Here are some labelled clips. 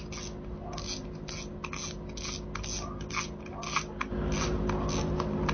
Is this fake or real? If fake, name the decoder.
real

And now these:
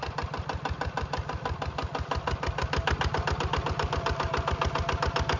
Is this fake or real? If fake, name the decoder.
real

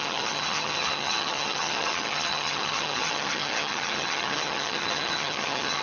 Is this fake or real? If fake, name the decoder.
fake, vocoder, HiFi-GAN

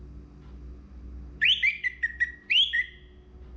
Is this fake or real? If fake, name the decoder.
real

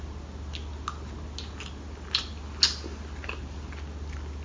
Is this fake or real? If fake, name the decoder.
real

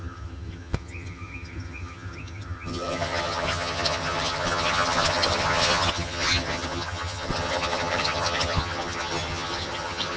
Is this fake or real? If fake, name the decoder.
fake, vocoder, HiFi-GAN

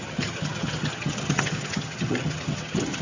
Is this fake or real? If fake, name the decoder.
fake, vocoder, HiFi-GAN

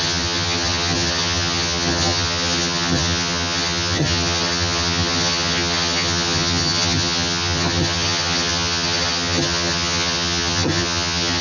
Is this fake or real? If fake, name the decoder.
fake, vocoder, HiFi-GAN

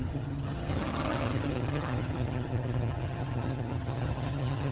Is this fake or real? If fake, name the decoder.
fake, vocoder, HiFi-GAN